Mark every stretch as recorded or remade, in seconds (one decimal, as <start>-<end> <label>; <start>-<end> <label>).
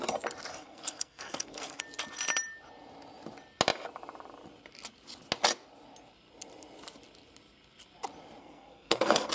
0.0-0.5 recorded; 0.5-1.8 remade; 1.8-8.4 recorded; 8.4-9.3 remade